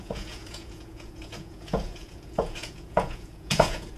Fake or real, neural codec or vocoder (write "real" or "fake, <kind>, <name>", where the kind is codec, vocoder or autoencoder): fake, vocoder, Vocos